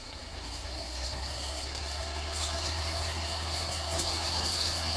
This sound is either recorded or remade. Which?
remade